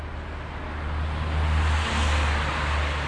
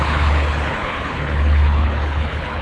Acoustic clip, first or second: first